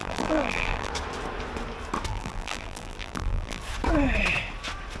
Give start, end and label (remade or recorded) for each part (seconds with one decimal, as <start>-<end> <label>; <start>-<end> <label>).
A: 0.0-0.9 remade; 0.9-2.1 recorded; 2.1-3.6 remade; 3.6-5.0 recorded